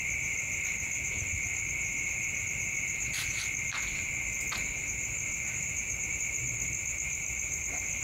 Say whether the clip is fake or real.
real